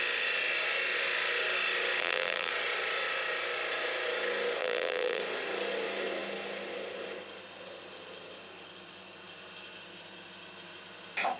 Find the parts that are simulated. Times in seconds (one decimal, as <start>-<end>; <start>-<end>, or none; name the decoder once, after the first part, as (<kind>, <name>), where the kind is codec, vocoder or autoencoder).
2.0-2.5 (vocoder, BigVGAN v2); 4.6-5.2